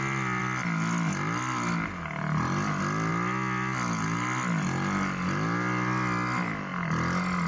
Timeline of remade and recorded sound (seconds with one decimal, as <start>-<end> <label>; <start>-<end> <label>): 0.0-7.5 recorded